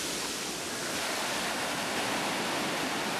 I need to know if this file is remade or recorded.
recorded